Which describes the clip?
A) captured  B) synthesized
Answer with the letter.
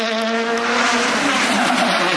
A